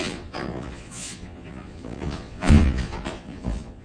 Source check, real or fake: fake